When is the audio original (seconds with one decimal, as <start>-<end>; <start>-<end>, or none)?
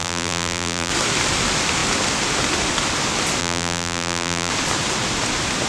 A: 0.9-3.4; 4.5-5.7